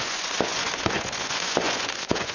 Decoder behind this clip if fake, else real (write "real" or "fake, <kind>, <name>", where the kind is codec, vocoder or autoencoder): fake, vocoder, Vocos